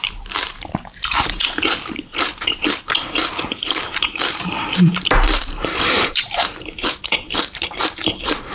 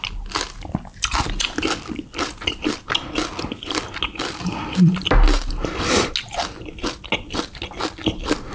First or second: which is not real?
first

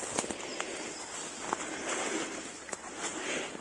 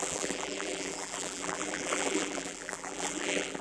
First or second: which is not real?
second